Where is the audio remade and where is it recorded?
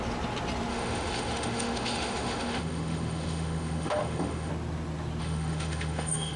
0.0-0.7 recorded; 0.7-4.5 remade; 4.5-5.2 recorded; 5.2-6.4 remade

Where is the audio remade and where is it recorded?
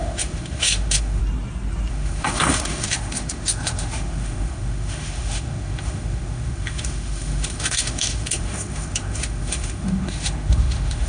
0.0-1.2 remade; 1.2-1.9 recorded; 1.9-11.1 remade